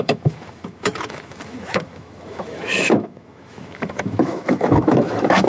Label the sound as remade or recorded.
remade